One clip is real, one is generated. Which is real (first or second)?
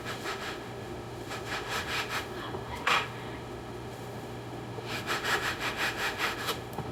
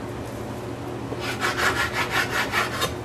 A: second